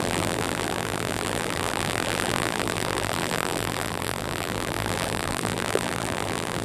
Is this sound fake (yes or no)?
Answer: yes